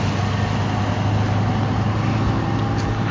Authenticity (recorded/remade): recorded